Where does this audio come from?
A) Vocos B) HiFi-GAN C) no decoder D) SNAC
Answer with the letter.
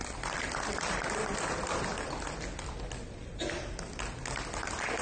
C